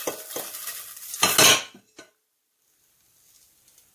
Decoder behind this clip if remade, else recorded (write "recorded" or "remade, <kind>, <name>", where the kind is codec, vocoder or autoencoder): recorded